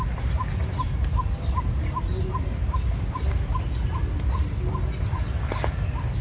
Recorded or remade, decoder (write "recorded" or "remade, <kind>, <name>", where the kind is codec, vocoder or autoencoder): recorded